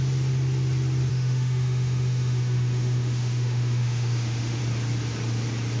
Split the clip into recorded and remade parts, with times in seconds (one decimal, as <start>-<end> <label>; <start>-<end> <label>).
0.0-1.1 recorded; 1.1-4.6 remade; 4.6-5.8 recorded